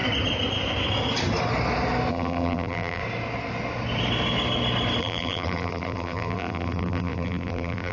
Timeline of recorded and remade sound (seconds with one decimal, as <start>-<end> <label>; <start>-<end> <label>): 0.0-2.1 recorded; 2.1-3.0 remade; 3.0-5.0 recorded; 5.0-7.9 remade

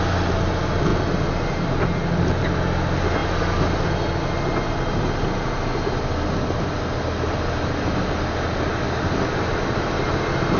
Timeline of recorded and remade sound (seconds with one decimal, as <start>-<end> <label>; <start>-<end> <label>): 0.0-10.6 recorded

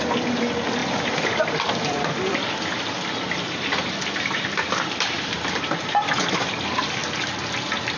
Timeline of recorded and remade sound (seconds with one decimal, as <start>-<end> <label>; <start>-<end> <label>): 0.0-7.0 remade; 7.0-8.0 recorded